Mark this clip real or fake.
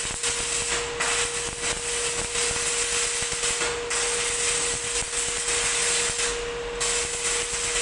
real